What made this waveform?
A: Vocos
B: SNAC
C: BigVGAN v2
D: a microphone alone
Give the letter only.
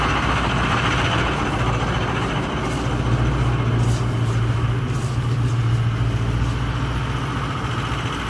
D